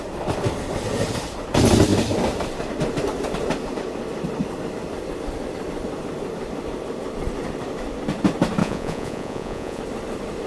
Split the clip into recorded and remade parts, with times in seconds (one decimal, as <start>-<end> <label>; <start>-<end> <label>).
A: 0.0-8.6 recorded; 8.6-9.8 remade; 9.8-10.5 recorded